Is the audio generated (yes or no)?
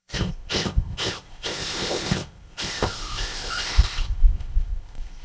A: yes